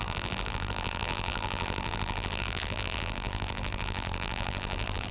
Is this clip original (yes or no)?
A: no